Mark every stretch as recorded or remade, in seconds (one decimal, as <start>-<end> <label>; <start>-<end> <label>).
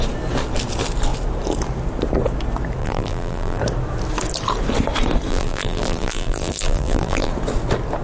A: 0.0-2.8 recorded; 2.8-3.6 remade; 3.6-5.3 recorded; 5.3-7.3 remade; 7.3-8.0 recorded